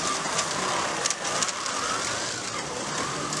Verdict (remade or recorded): recorded